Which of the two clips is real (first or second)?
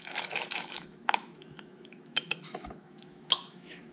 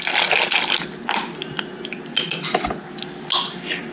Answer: second